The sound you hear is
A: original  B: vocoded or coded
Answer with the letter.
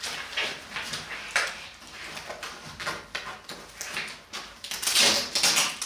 A